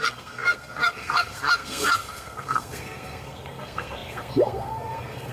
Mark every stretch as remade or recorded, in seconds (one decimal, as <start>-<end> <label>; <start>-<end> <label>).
0.0-5.3 remade